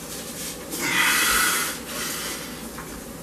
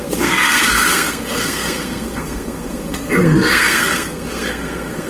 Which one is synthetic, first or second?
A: second